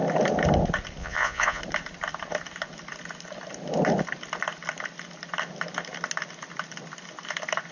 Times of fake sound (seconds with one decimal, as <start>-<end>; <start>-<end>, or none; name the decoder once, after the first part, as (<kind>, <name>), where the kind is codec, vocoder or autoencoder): 1.0-1.6 (vocoder, Vocos)